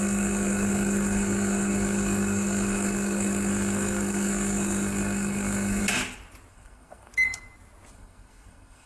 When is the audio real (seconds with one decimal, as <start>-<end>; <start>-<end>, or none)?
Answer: 5.8-6.5; 7.1-7.9